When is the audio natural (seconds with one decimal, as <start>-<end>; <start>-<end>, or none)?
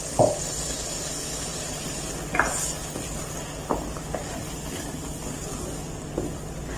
0.0-1.5; 2.1-6.8